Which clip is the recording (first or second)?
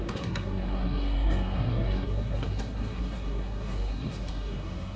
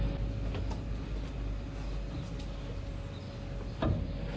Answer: second